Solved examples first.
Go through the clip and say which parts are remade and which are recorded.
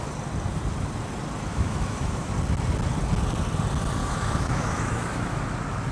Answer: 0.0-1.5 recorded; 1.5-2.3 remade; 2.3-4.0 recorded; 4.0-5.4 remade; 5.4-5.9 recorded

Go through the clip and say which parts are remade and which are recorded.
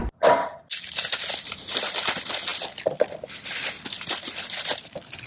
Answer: 0.0-5.3 recorded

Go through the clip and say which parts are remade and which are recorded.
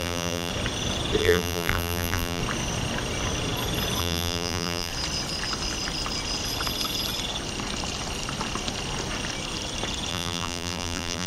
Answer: 0.0-0.5 remade; 0.5-1.2 recorded; 1.2-2.4 remade; 2.4-4.0 recorded; 4.0-4.9 remade; 4.9-10.1 recorded; 10.1-11.3 remade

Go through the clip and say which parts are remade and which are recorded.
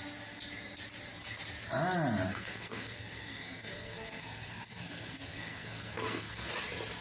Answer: 0.0-2.3 recorded; 2.3-6.5 remade; 6.5-7.0 recorded